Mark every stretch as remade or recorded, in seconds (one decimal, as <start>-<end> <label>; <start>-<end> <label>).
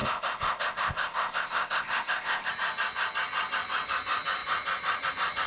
0.0-2.5 remade; 2.5-5.5 recorded